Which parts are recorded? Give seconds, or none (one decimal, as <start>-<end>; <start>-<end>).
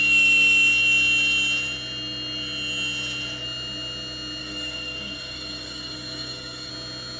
0.0-4.4; 6.7-7.2